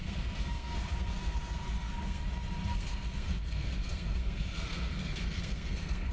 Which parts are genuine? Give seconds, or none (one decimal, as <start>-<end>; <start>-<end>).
2.2-2.7